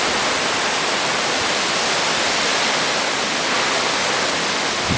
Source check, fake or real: real